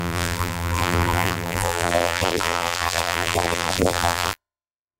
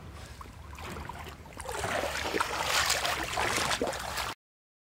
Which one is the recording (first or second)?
second